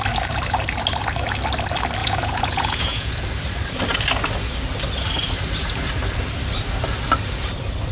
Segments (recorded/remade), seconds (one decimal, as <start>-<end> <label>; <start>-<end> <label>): 0.0-2.0 recorded; 2.0-3.1 remade; 3.1-7.9 recorded